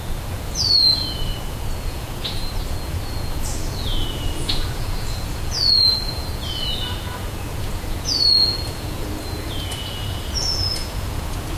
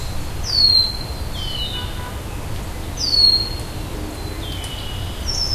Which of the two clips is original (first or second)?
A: second